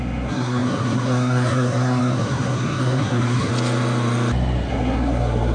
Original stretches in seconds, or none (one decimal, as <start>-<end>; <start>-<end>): 3.5-4.7